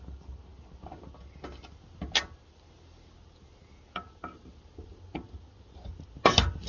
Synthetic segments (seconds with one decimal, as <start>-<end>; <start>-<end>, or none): none